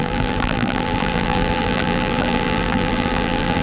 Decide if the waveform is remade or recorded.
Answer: remade